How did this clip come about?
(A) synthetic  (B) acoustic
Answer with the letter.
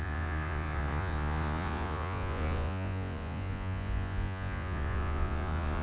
A